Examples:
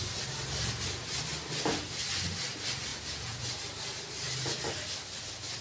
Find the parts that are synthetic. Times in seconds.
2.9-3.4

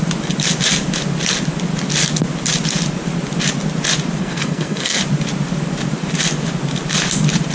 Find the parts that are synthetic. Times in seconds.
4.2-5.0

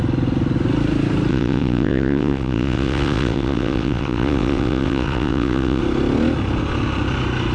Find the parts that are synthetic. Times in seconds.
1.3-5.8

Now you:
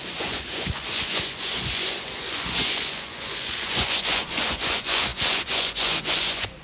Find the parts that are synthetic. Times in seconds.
0.0-6.6

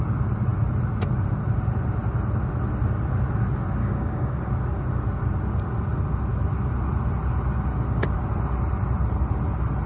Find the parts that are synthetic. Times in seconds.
3.8-4.5

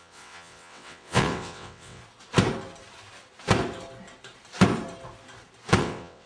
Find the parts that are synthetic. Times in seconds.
0.0-2.0; 5.8-6.3